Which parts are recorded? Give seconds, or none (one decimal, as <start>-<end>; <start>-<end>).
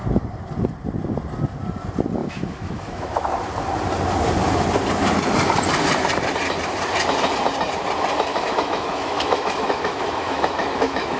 0.0-2.2; 3.3-8.3